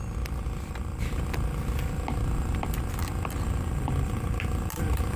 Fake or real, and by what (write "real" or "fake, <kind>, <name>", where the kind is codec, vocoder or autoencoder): real